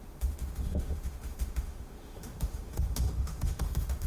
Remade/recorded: remade